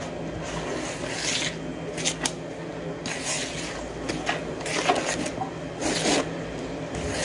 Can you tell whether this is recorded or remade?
recorded